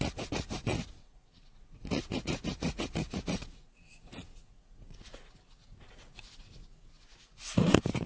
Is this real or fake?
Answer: fake